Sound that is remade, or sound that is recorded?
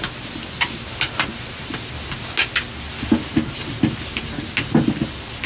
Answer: recorded